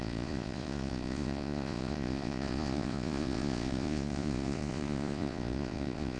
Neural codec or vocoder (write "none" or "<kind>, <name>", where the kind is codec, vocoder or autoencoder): vocoder, Vocos